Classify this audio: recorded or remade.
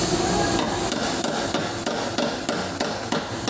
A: recorded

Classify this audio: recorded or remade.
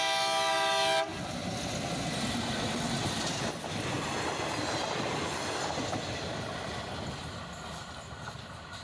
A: recorded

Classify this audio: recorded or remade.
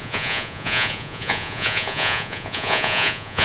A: remade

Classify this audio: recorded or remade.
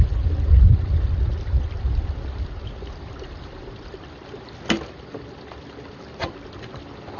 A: recorded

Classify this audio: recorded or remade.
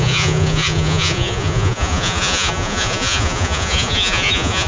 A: remade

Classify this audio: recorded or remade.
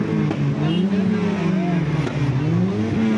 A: recorded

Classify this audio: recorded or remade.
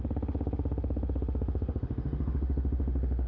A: remade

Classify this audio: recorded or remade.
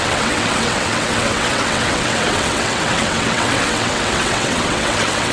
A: remade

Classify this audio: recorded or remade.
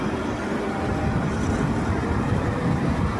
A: remade